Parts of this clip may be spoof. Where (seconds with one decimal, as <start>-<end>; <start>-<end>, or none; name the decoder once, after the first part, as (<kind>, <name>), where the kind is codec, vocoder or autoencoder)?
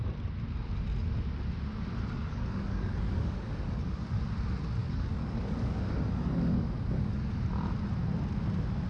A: 2.2-4.2 (codec, DAC); 4.8-7.4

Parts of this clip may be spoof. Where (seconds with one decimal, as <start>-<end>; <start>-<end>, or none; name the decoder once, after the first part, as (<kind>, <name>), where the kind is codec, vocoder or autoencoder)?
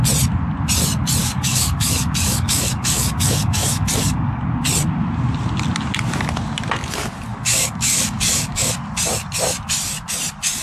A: 1.2-4.4 (codec, DAC); 7.3-8.7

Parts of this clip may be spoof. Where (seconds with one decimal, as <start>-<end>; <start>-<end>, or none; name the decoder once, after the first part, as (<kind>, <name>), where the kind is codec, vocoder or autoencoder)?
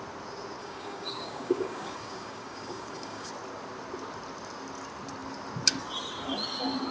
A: 0.6-3.3 (codec, DAC)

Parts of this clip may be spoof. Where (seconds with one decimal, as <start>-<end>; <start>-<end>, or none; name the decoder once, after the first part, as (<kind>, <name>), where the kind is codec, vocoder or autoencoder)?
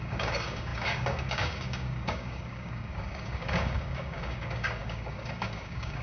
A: 0.0-6.0 (codec, DAC)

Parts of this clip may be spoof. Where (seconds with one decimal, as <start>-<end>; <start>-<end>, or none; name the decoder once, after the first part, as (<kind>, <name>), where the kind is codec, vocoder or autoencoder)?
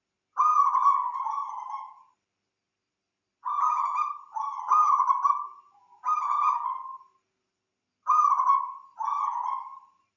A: none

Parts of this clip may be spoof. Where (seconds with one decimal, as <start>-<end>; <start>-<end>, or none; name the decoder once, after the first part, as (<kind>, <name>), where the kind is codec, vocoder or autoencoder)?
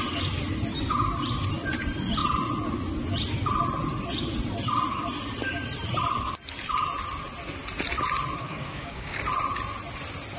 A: 8.4-9.2 (codec, DAC)